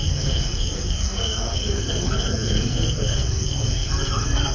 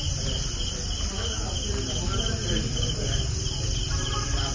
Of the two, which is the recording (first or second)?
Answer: second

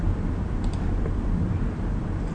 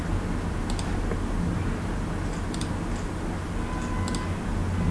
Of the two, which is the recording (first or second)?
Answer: second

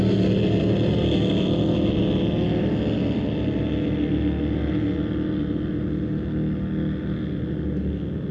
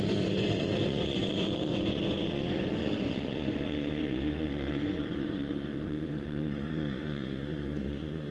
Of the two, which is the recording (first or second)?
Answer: first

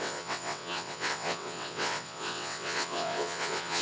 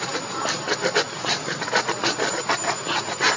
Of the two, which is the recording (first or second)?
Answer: second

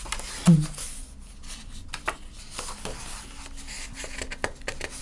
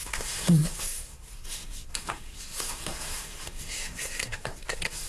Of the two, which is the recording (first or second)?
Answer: first